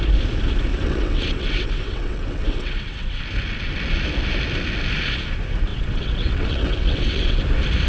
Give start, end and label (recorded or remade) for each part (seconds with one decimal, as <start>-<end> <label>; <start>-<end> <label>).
0.0-0.7 recorded; 0.7-3.2 remade; 3.2-5.7 recorded; 5.7-7.4 remade; 7.4-7.9 recorded